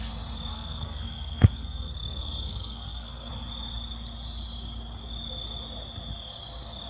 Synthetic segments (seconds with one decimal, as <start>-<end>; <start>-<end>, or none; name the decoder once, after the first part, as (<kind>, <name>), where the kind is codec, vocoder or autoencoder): 0.5-3.3 (codec, SNAC)